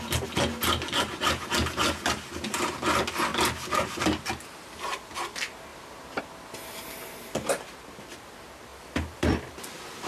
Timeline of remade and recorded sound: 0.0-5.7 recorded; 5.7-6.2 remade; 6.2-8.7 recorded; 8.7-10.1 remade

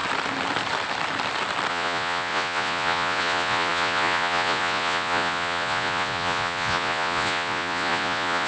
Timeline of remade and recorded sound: 0.0-1.7 recorded; 1.7-8.5 remade

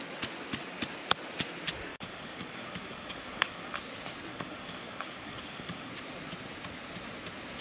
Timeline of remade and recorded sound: 0.0-1.9 recorded; 1.9-3.8 remade; 3.8-4.3 recorded; 4.3-5.9 remade; 5.9-7.6 recorded

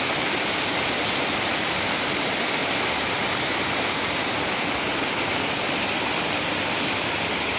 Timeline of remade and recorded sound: 0.0-7.6 recorded

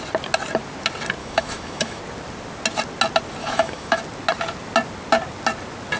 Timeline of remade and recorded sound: 0.0-1.2 recorded; 1.2-2.0 remade; 2.0-3.4 recorded; 3.4-4.0 remade; 4.0-6.0 recorded

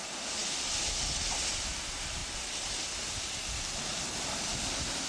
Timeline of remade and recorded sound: 0.0-5.1 recorded

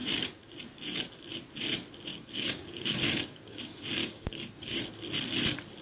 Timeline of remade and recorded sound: 0.0-2.1 recorded; 2.1-3.6 remade; 3.6-4.0 recorded; 4.0-4.8 remade; 4.8-5.8 recorded

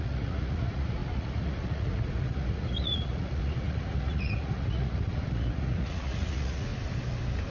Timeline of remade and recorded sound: 0.0-6.7 remade; 6.7-7.5 recorded